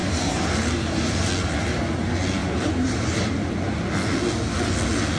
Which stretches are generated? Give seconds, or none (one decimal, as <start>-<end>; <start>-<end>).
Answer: 0.0-1.3; 2.4-3.4